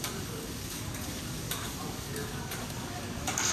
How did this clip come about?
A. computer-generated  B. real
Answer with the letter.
A